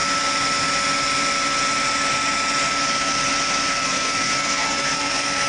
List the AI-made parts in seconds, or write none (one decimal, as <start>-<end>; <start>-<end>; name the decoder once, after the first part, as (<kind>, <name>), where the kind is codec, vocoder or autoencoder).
3.7-5.5 (codec, SNAC)